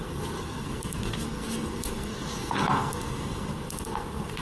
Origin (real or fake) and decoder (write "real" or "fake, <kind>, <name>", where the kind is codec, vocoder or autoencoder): fake, codec, SNAC